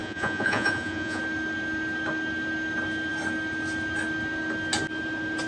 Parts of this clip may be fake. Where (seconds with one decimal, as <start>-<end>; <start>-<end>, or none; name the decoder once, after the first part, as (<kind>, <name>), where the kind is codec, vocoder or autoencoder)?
0.0-1.2 (vocoder, Vocos)